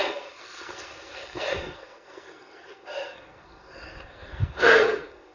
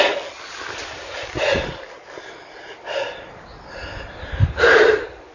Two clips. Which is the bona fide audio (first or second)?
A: second